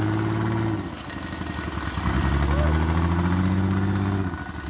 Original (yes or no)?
yes